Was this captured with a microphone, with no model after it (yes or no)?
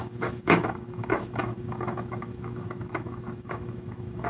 no